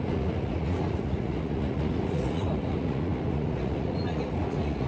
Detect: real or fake fake